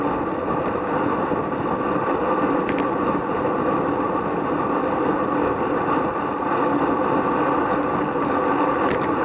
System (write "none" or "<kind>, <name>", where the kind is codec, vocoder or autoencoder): none